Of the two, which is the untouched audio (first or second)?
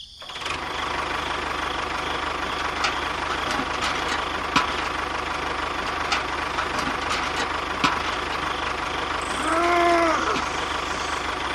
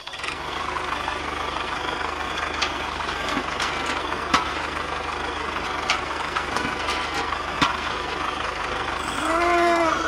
first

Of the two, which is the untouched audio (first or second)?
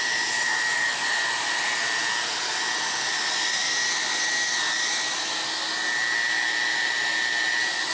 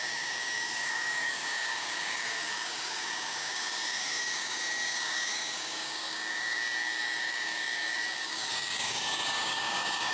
first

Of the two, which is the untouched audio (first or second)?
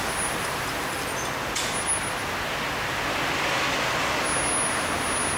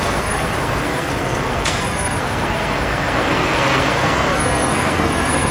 first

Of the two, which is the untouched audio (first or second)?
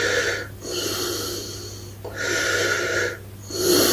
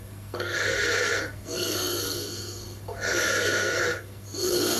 first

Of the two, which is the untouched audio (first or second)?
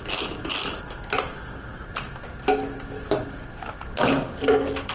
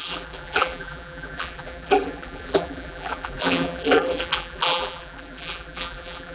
first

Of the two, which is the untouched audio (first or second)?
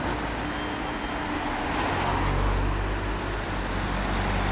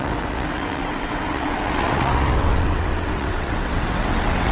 first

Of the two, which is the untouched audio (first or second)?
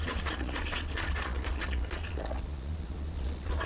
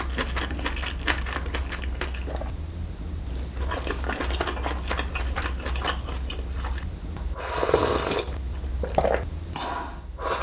second